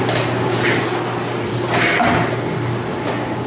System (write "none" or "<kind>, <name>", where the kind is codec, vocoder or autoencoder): none